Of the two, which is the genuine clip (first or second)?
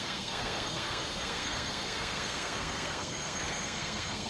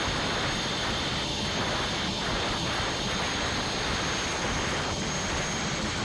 second